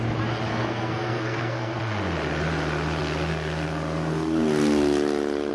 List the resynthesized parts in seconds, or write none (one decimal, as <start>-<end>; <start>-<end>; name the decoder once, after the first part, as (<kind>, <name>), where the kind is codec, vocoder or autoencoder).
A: 0.5-1.8 (codec, SNAC)